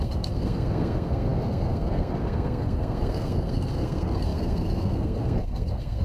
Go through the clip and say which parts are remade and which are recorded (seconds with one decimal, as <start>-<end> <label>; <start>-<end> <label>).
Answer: 0.0-6.0 remade